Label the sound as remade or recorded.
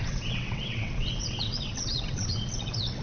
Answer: remade